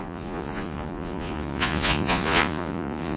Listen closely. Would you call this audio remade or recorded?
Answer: remade